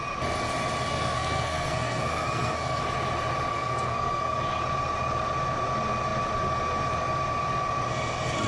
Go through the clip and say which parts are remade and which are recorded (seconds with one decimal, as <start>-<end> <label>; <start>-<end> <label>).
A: 0.0-0.9 recorded; 0.9-2.8 remade; 2.8-3.5 recorded; 3.5-4.4 remade; 4.4-8.5 recorded